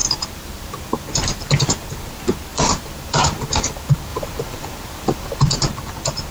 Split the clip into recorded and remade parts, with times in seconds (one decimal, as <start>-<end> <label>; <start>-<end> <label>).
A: 0.0-2.0 remade; 2.0-2.5 recorded; 2.5-3.4 remade; 3.4-6.3 recorded